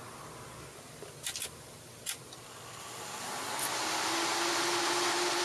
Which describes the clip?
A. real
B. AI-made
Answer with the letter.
A